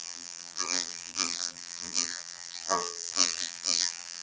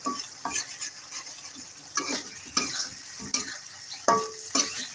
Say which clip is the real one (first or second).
second